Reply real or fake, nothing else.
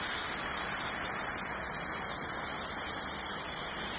fake